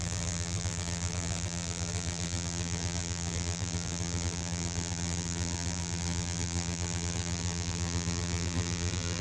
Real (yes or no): no